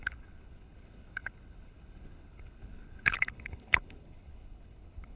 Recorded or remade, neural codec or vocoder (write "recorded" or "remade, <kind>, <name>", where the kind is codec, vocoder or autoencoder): remade, codec, HILCodec